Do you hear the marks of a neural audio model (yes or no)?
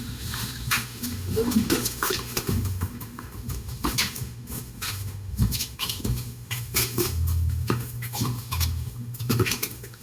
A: yes